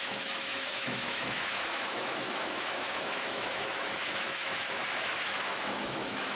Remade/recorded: remade